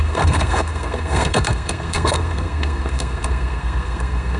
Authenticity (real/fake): fake